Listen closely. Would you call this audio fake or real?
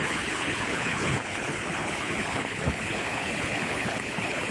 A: fake